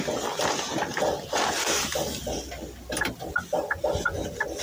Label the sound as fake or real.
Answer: real